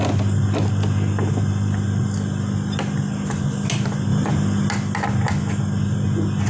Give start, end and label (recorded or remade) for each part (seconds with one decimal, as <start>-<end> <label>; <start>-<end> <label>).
0.0-6.5 recorded